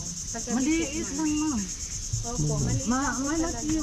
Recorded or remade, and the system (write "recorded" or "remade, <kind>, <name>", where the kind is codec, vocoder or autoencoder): recorded